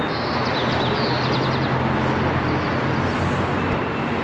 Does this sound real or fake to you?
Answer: real